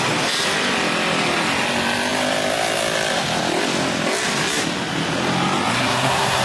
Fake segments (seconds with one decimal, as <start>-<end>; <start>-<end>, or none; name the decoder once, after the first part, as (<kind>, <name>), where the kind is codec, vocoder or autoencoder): 5.8-6.4 (codec, SNAC)